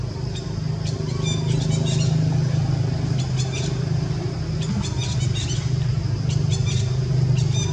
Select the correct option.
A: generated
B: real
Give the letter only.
B